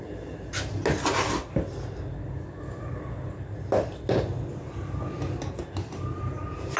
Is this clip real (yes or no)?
yes